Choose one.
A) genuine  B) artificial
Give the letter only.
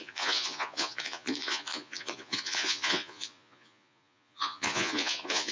B